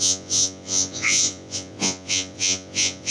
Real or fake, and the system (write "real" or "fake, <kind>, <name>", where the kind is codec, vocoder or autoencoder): fake, vocoder, Vocos